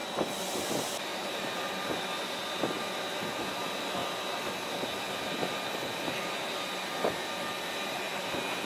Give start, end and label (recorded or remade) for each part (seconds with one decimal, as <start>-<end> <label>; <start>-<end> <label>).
0.0-8.6 recorded